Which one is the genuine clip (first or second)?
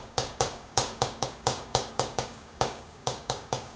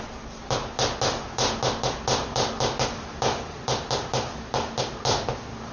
second